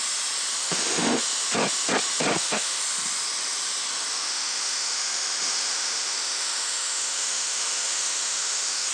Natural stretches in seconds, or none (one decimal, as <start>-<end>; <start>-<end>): 0.0-0.6; 1.2-2.3; 2.8-4.1